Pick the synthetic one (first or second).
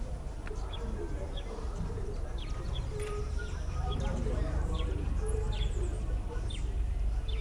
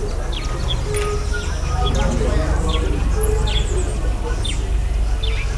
first